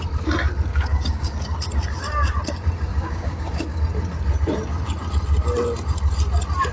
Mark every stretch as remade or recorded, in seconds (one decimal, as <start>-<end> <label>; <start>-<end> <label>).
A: 0.0-0.7 recorded; 0.7-1.3 remade; 1.3-2.9 recorded; 2.9-3.8 remade; 3.8-6.7 recorded